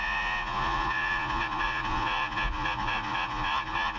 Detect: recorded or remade remade